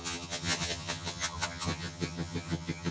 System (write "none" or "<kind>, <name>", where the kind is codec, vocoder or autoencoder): vocoder, HiFi-GAN